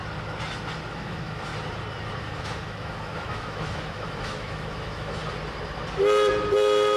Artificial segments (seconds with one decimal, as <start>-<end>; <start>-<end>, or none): 0.9-1.5; 2.2-5.2